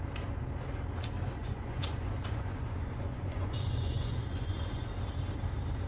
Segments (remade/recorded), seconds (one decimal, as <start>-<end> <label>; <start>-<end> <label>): 0.0-1.4 recorded; 1.4-4.9 remade; 4.9-5.9 recorded